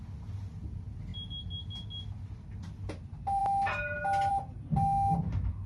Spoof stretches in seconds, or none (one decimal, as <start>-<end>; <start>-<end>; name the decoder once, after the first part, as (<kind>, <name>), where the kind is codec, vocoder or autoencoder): none